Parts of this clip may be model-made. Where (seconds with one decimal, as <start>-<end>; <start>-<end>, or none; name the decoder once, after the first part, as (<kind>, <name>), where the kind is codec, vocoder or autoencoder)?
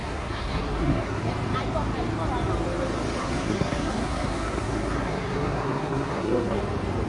0.0-1.2 (codec, SNAC); 3.2-6.6